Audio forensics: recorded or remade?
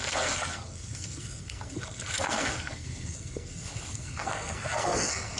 remade